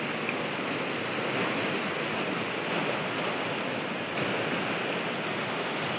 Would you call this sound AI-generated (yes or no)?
no